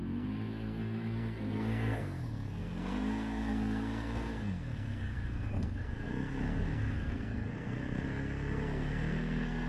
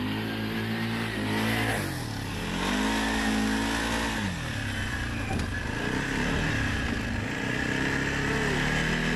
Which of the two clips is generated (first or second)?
first